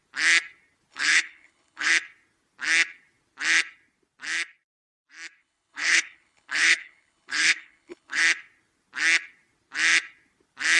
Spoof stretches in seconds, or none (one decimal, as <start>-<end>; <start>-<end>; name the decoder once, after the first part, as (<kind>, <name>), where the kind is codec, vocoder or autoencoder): 0.9-1.9 (codec, HILCodec); 5.4-8.2